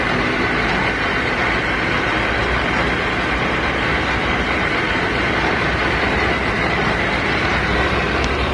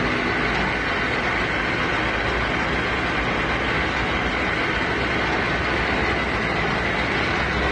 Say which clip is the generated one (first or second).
first